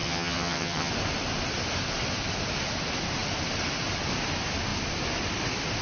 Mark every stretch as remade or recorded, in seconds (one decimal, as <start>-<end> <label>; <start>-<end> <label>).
0.0-0.9 remade; 0.9-5.8 recorded